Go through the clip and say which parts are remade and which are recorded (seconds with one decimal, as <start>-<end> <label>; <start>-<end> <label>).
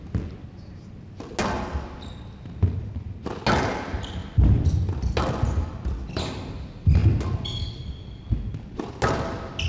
0.0-9.7 recorded